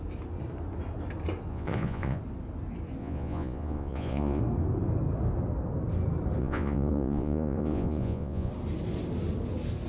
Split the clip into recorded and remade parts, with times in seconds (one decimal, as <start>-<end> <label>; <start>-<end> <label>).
0.0-1.5 recorded; 1.5-2.2 remade; 2.2-3.0 recorded; 3.0-4.4 remade; 4.4-6.4 recorded; 6.4-8.5 remade; 8.5-9.9 recorded